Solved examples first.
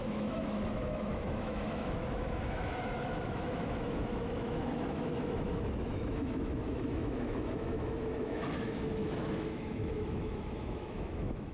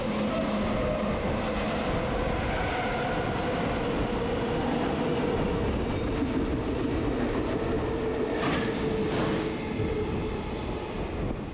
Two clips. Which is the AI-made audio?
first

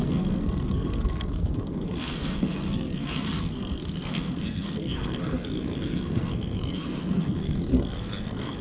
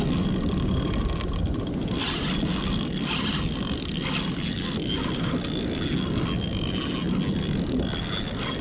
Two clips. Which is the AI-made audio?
first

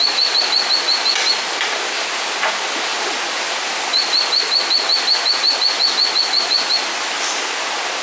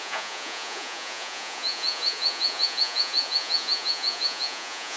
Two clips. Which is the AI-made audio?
second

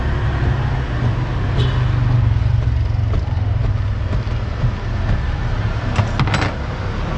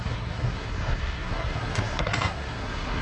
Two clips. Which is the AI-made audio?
second